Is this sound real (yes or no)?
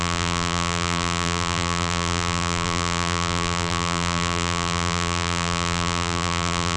no